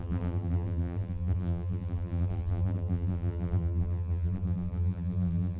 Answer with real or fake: fake